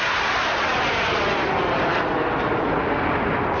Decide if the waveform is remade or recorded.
recorded